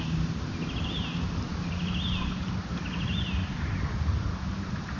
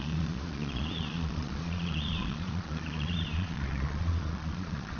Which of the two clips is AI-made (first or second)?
second